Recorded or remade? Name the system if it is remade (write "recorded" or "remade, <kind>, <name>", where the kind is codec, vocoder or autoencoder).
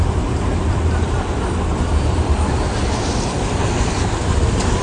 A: remade, vocoder, BigVGAN v2